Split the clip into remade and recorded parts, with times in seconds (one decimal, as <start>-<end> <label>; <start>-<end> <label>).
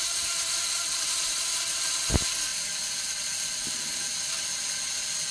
0.0-5.3 recorded